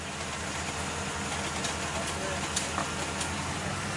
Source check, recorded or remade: recorded